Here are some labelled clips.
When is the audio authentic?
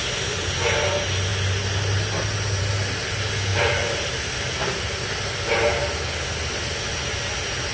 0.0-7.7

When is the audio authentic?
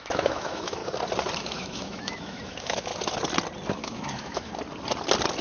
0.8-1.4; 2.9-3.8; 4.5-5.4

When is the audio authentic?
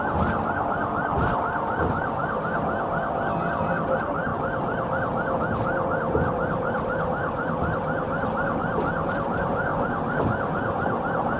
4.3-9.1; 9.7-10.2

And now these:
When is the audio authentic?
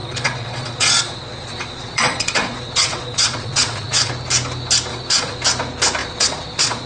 4.1-4.9; 5.4-6.0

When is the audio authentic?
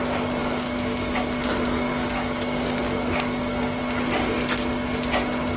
0.0-0.4; 3.8-5.6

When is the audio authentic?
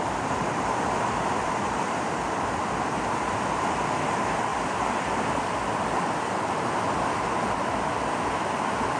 0.0-9.0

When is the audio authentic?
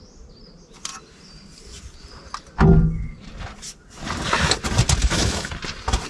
0.0-5.0; 5.5-6.1